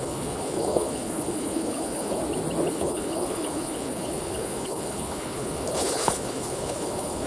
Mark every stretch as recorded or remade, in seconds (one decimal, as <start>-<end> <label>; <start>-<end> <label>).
0.0-2.2 remade; 2.2-2.7 recorded; 2.7-7.3 remade